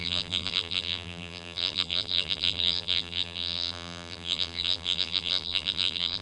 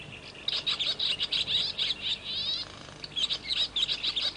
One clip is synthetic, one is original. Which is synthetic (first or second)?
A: first